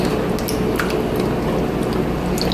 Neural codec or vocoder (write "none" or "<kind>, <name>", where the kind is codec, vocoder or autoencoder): none